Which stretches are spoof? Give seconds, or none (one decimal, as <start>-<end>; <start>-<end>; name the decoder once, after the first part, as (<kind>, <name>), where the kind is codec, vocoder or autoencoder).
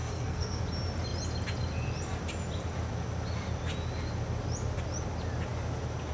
0.0-0.6 (codec, SNAC)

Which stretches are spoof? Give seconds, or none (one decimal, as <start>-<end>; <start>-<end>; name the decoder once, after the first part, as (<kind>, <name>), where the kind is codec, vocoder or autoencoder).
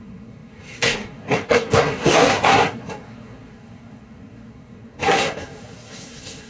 0.0-6.5 (codec, SNAC)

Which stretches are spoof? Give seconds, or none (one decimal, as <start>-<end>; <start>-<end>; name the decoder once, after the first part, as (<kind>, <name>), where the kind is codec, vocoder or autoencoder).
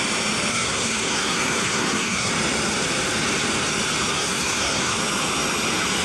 0.5-2.3 (codec, SNAC); 4.1-4.9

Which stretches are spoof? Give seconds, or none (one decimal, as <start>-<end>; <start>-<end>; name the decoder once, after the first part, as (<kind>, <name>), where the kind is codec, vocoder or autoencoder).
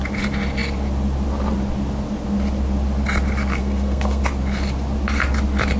3.6-4.2 (codec, SNAC)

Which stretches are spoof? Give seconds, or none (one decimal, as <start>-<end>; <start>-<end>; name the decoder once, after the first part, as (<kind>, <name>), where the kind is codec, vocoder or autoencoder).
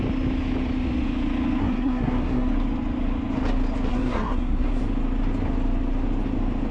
1.6-2.5 (codec, SNAC); 3.9-4.8